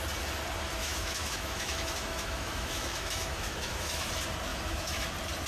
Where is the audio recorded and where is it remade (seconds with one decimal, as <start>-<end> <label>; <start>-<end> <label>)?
0.0-0.8 recorded; 0.8-4.1 remade; 4.1-4.5 recorded; 4.5-5.1 remade; 5.1-5.5 recorded